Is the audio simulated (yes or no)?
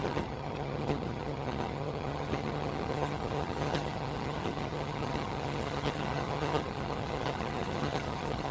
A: yes